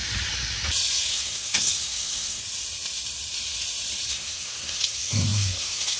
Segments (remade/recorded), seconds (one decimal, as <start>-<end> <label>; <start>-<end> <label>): 0.0-1.1 recorded; 1.1-2.4 remade; 2.4-4.1 recorded; 4.1-6.0 remade